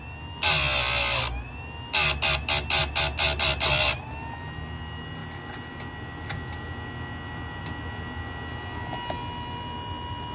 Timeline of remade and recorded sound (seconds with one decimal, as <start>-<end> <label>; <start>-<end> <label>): 0.0-10.3 recorded